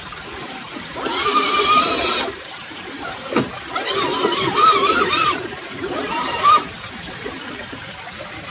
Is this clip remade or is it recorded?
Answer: remade